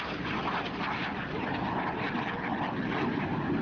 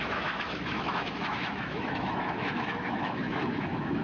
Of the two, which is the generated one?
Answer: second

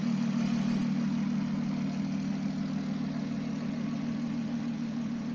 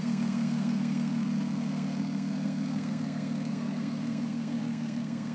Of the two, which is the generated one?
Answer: second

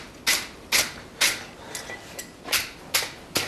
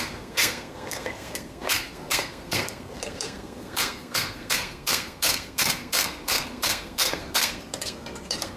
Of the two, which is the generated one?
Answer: second